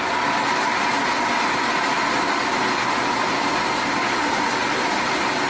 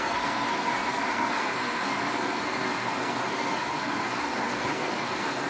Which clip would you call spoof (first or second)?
second